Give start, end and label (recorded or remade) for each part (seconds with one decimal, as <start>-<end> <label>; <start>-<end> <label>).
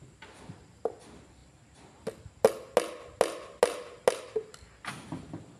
0.0-5.6 recorded